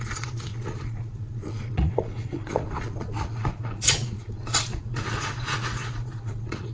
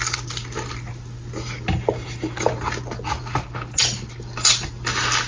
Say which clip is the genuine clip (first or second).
second